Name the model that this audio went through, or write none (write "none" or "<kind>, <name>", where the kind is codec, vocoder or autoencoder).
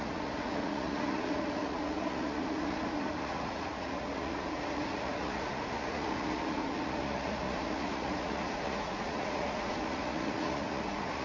vocoder, Vocos